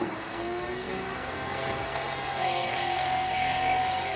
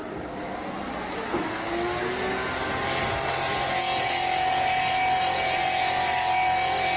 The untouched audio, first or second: second